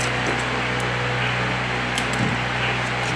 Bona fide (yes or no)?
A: yes